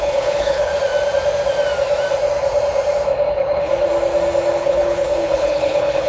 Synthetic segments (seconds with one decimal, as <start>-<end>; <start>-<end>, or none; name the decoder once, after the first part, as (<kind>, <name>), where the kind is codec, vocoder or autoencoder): 0.0-0.7 (codec, HILCodec); 3.3-3.7; 4.6-6.1